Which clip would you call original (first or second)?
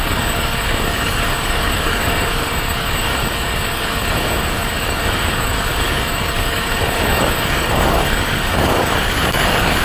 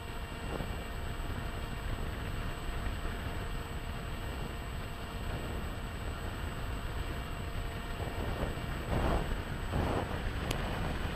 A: second